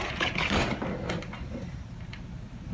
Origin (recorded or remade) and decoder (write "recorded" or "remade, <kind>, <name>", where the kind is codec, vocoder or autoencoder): recorded